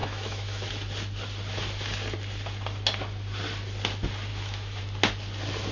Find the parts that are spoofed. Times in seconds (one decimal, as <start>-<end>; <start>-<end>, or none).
0.0-0.7; 4.3-4.8

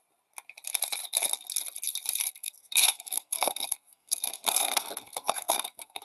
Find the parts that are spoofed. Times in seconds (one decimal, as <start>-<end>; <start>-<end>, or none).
2.2-6.0

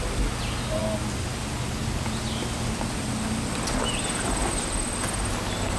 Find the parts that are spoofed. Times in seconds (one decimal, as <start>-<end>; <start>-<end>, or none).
none

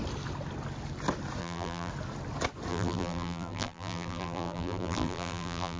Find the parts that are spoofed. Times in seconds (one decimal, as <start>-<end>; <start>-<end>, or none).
1.4-1.9; 2.7-5.8